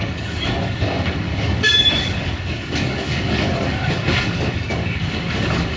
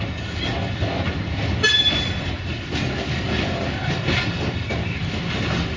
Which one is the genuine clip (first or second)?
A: second